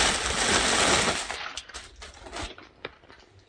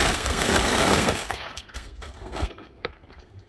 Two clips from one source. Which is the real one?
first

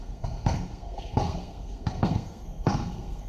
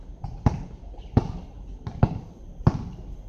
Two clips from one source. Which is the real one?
second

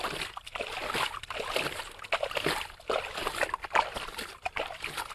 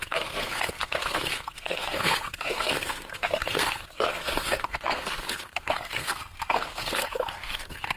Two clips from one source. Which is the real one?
first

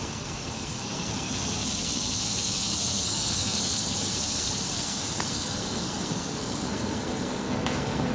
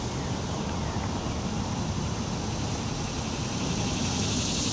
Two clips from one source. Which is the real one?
second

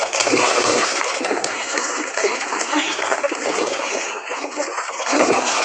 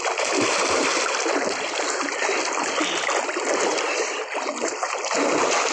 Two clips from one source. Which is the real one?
second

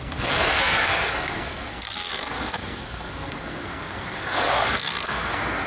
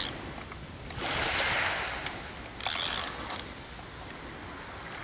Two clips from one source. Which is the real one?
second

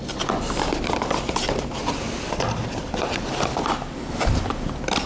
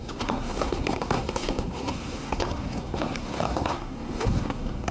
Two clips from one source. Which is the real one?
first